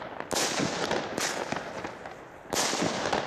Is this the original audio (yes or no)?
yes